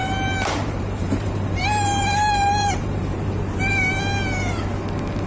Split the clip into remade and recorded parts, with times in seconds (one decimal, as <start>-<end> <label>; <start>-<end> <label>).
0.0-3.2 remade; 3.2-5.3 recorded